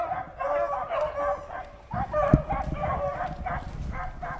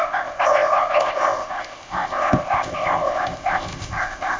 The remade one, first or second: second